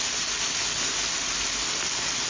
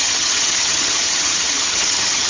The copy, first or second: second